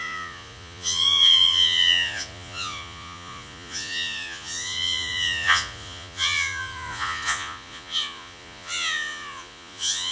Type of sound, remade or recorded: remade